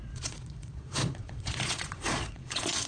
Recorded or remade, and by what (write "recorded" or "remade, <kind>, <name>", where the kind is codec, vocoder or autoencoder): remade, vocoder, Vocos